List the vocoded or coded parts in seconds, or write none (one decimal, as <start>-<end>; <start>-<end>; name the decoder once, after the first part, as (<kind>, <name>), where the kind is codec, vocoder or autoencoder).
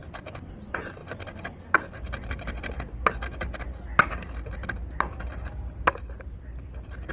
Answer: 1.0-5.3 (vocoder, BigVGAN v2); 5.9-7.1